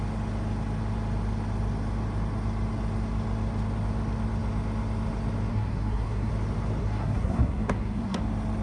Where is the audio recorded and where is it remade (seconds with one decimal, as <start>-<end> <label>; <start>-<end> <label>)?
0.0-5.5 recorded; 5.5-6.3 remade; 6.3-6.8 recorded; 6.8-8.2 remade; 8.2-8.6 recorded